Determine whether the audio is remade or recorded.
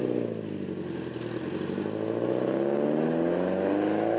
recorded